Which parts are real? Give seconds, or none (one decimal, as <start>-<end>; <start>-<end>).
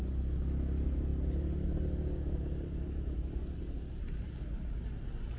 0.0-5.4